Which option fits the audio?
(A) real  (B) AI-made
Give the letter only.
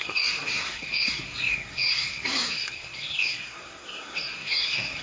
B